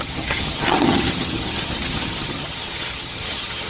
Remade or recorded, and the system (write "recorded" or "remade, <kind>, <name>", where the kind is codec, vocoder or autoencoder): remade, vocoder, HiFi-GAN